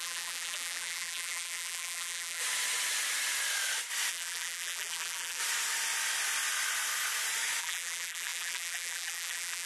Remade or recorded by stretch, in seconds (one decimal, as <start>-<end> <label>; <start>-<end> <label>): 0.0-2.4 remade; 2.4-4.1 recorded; 4.1-5.4 remade; 5.4-7.6 recorded; 7.6-9.7 remade